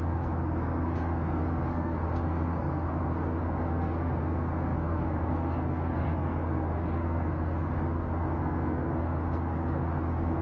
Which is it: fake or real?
fake